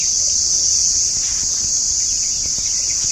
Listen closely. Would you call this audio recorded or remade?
recorded